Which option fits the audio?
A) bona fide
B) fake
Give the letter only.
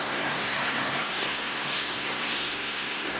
B